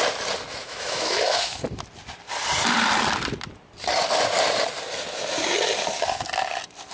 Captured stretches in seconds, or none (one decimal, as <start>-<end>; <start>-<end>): 0.0-0.6; 1.6-6.9